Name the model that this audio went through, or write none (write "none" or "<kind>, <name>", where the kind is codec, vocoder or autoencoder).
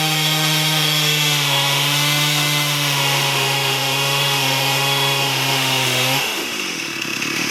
autoencoder, DAC-VAE